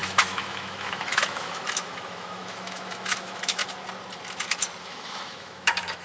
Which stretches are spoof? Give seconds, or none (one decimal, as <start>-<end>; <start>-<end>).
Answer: 0.0-3.6; 4.8-6.0